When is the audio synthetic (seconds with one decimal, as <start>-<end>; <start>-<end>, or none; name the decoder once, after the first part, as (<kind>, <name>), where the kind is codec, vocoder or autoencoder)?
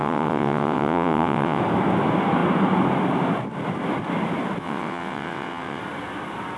0.0-1.6 (vocoder, WaveNeXt); 4.6-5.8